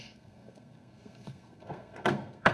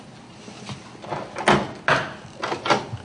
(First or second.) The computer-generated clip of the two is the first